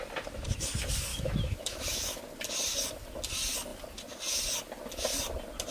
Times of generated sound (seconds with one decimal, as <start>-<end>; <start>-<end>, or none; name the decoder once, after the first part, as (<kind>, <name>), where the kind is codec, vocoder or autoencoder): 1.1-2.2 (autoencoder, DAC-VAE)